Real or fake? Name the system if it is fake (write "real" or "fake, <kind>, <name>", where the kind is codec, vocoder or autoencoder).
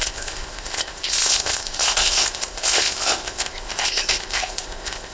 fake, codec, ZipCodec